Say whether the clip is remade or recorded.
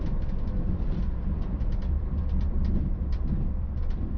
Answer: remade